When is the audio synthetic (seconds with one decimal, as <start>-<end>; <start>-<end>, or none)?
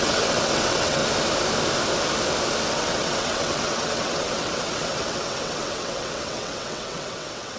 0.0-1.0; 2.7-7.6